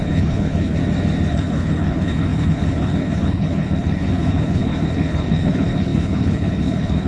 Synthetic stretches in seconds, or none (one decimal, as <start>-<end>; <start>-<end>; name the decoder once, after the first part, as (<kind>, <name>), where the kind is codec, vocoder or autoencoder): 0.0-0.8 (codec, HILCodec); 1.3-7.1